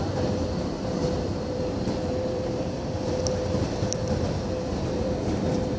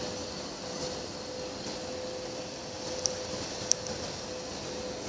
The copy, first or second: first